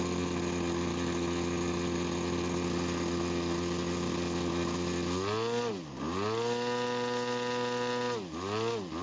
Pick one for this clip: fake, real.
real